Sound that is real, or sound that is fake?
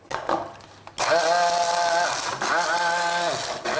real